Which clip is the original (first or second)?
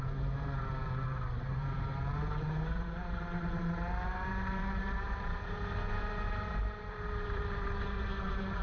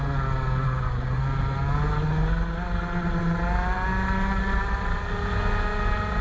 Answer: second